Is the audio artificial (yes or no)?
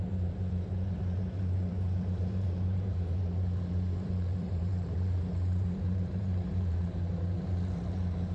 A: yes